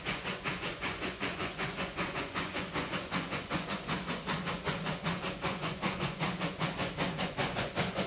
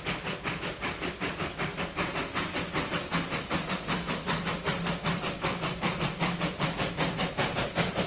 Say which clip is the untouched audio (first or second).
second